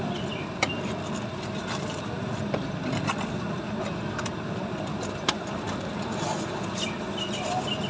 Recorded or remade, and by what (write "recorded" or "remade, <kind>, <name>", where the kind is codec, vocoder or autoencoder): recorded